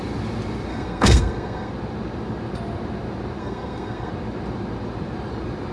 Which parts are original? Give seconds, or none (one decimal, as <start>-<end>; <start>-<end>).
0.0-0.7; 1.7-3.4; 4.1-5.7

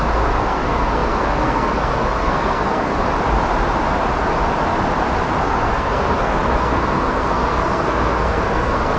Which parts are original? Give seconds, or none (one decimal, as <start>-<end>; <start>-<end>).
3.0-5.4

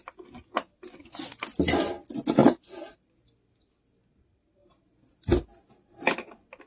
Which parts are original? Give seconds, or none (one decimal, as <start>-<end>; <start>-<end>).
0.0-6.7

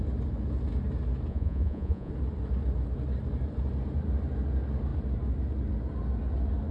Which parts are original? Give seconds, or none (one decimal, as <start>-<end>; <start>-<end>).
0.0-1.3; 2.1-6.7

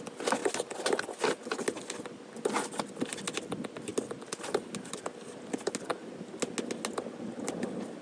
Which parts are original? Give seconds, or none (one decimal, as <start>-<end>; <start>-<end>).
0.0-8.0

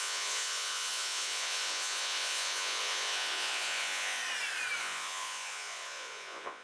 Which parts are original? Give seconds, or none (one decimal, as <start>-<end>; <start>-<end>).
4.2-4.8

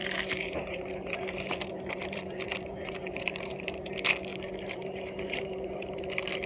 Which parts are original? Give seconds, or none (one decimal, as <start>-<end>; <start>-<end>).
3.9-4.3; 6.0-6.5

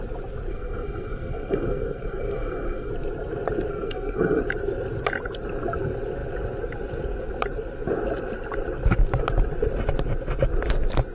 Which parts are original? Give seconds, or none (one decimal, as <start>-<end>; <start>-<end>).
0.0-0.5; 2.9-3.7; 4.4-11.1